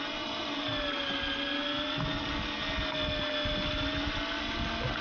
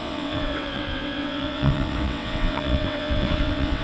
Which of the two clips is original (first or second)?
first